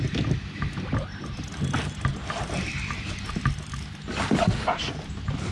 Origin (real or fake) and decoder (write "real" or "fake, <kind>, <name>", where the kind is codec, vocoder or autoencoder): real